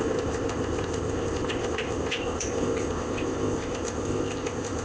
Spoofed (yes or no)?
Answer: yes